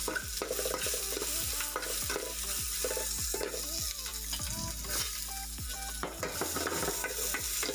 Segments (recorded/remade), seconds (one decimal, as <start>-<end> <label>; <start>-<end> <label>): 0.0-7.7 recorded